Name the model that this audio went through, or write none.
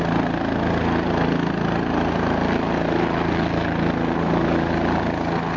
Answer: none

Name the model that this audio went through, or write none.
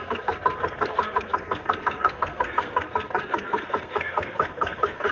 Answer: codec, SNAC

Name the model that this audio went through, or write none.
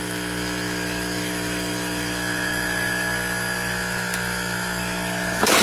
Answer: autoencoder, DAC-VAE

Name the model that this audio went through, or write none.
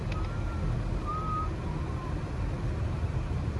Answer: none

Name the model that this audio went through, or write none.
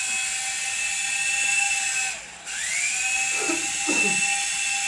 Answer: none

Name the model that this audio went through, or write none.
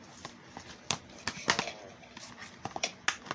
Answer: none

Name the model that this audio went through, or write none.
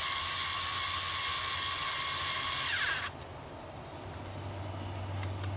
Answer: none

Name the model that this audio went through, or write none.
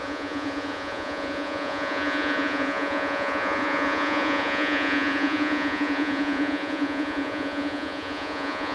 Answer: vocoder, Vocos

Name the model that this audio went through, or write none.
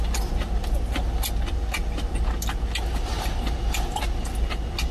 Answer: none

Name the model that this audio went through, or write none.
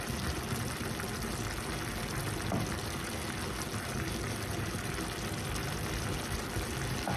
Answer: none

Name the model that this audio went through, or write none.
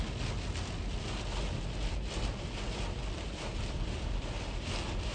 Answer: none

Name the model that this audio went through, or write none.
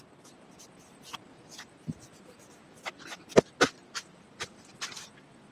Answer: none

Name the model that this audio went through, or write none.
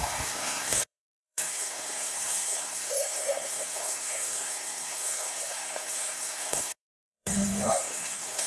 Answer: codec, SNAC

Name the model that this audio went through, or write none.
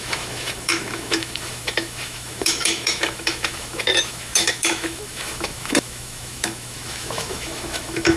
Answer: autoencoder, DAC-VAE